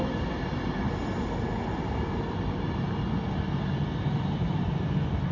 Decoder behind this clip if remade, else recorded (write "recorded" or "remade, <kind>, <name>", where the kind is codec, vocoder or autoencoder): recorded